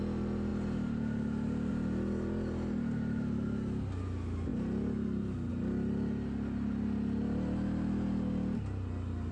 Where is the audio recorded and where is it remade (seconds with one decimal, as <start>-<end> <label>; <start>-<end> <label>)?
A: 0.0-9.3 recorded